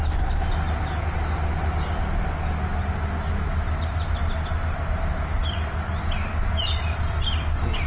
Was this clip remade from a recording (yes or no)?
no